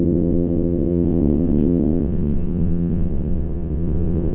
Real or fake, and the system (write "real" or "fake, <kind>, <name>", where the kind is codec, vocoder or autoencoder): fake, vocoder, WaveNeXt